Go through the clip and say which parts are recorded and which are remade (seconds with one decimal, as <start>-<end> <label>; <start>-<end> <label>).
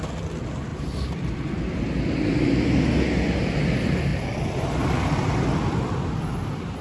0.0-0.7 recorded; 0.7-1.8 remade; 1.8-4.1 recorded; 4.1-4.9 remade; 4.9-6.8 recorded